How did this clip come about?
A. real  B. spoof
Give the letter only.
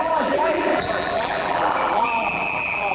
B